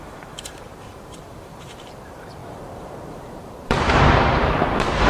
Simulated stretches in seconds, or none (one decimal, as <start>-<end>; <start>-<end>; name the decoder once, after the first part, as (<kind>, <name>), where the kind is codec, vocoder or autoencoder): 0.0-5.1 (vocoder, BigVGAN v2)